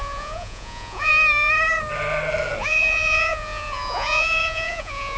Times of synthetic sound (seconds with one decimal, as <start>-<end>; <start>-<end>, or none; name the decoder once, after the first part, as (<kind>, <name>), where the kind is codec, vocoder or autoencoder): 0.0-1.1 (vocoder, Vocos); 2.6-5.2